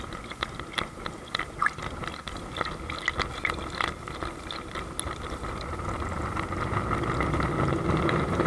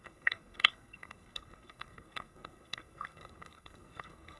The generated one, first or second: second